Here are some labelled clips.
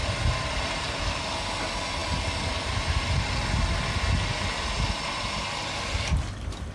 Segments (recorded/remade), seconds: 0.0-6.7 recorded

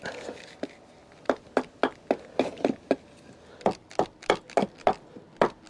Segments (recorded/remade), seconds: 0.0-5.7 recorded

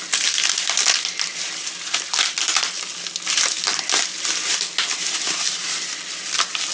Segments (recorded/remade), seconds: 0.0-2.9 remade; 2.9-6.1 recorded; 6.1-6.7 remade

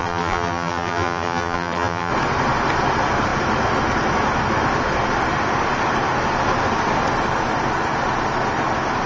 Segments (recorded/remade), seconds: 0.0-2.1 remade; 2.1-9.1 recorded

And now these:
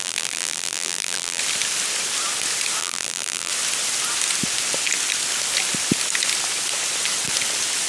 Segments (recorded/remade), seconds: 0.0-1.4 remade; 1.4-2.8 recorded; 2.8-3.5 remade; 3.5-7.9 recorded

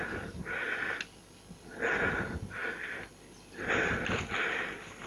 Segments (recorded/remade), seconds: 0.0-5.1 recorded